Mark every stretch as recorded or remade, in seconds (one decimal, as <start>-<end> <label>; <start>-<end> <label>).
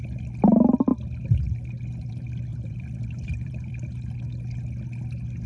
0.0-2.5 recorded; 2.5-3.7 remade; 3.7-5.5 recorded